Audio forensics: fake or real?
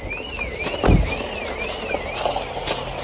real